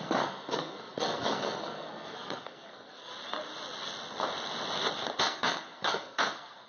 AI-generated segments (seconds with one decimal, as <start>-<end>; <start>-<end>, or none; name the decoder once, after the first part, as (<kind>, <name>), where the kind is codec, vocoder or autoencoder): 0.0-3.1 (codec, SNAC); 5.2-6.7